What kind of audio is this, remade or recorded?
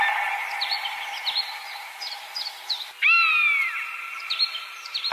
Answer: remade